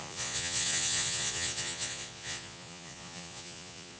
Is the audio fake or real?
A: fake